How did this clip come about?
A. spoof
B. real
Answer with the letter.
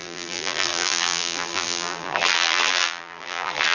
A